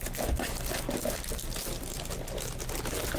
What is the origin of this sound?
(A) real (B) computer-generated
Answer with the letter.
A